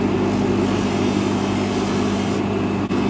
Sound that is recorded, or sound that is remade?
recorded